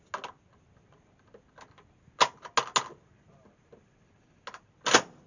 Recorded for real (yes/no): yes